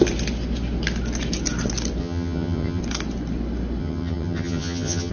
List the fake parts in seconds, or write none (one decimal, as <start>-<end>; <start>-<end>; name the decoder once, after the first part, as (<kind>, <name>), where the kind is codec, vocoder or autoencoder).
2.0-2.8 (vocoder, HiFi-GAN); 3.8-5.1